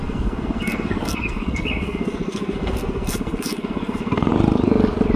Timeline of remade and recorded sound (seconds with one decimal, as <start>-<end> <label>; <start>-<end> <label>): 0.0-4.3 remade; 4.3-5.2 recorded